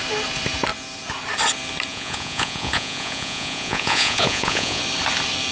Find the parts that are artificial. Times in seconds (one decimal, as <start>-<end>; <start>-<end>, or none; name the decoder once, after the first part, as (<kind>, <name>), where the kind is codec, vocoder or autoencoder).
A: 1.9-4.8 (vocoder, Vocos)